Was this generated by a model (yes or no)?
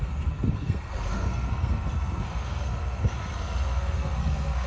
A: yes